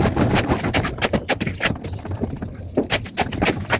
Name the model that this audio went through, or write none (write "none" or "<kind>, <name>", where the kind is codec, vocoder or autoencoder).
none